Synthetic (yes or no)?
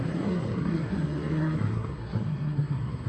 yes